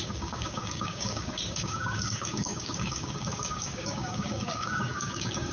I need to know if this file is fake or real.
fake